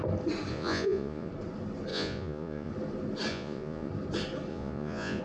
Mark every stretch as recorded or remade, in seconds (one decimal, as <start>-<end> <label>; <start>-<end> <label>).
0.0-0.5 recorded; 0.5-1.3 remade; 1.3-1.9 recorded; 1.9-2.7 remade; 2.7-3.3 recorded; 3.3-3.9 remade; 3.9-4.5 recorded; 4.5-5.2 remade